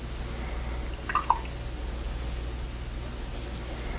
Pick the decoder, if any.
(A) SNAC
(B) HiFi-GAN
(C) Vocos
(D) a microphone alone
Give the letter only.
D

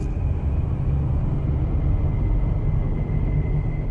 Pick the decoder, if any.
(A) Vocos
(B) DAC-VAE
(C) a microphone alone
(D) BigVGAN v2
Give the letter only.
C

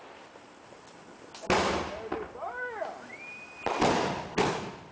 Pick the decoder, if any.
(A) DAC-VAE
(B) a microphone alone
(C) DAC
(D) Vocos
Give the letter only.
B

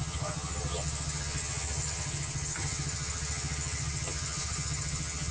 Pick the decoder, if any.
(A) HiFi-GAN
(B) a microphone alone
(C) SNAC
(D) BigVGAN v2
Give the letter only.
A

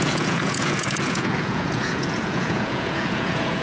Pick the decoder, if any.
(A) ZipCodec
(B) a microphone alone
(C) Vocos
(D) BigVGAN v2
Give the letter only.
C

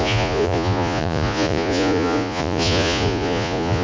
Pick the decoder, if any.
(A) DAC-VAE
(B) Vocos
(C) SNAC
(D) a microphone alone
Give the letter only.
B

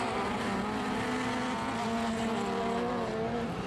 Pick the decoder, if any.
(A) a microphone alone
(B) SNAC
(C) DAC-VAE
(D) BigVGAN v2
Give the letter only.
A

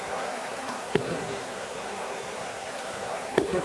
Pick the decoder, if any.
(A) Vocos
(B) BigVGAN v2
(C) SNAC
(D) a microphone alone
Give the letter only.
C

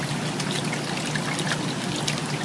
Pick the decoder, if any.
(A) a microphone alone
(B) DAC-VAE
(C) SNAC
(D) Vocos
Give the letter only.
A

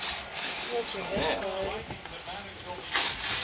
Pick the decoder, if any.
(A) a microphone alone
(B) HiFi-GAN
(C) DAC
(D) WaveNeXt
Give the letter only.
A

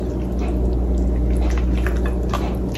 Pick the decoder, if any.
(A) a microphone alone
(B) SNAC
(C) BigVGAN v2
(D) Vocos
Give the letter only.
A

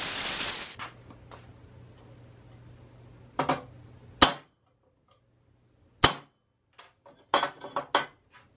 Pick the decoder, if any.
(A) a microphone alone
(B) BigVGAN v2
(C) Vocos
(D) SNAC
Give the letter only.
A